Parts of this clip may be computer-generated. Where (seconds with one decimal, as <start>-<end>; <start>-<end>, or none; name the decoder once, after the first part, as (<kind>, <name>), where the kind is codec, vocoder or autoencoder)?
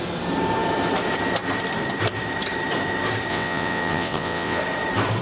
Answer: 3.3-4.6 (vocoder, WaveNeXt)